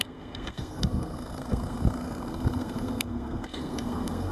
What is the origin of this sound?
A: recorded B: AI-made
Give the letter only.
B